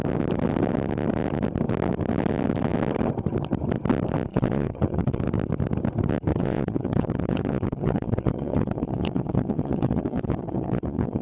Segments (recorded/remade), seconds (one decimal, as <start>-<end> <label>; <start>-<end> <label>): 0.0-4.3 recorded; 4.3-5.2 remade; 5.2-6.3 recorded; 6.3-11.2 remade